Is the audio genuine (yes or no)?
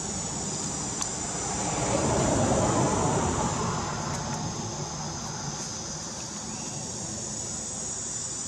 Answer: yes